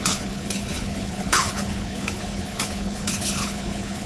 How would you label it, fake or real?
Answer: fake